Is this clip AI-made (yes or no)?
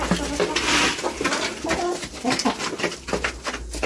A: no